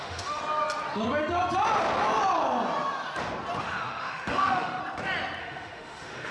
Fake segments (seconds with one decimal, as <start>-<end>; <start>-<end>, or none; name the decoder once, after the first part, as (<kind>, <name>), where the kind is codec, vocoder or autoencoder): 0.0-0.4 (autoencoder, DAC-VAE); 3.6-4.8; 5.4-6.3